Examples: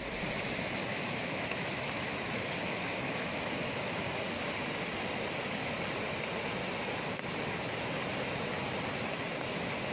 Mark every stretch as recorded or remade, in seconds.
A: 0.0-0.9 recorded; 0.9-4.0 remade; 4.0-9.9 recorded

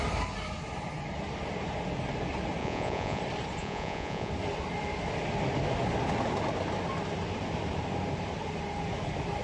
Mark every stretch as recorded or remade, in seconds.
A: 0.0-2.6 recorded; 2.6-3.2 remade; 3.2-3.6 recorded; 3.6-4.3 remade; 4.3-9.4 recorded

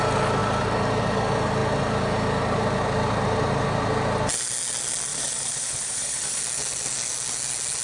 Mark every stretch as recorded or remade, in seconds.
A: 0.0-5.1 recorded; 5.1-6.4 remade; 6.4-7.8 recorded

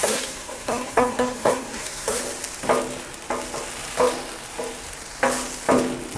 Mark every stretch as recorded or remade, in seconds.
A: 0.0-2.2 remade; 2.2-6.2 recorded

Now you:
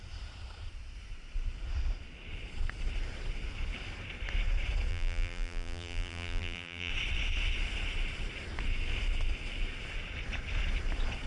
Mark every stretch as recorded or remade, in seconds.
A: 0.0-4.9 recorded; 4.9-6.9 remade; 6.9-11.3 recorded

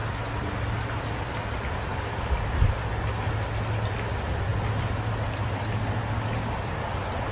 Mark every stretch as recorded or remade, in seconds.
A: 0.0-7.3 recorded